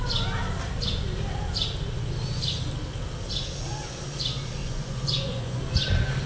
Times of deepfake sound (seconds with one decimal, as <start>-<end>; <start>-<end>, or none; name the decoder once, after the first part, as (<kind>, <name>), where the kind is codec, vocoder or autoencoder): 4.6-5.6 (vocoder, Vocos)